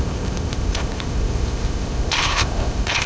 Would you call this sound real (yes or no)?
no